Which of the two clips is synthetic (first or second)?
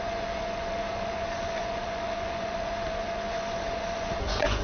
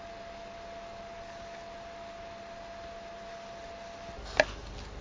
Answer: first